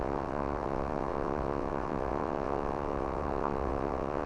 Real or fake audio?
fake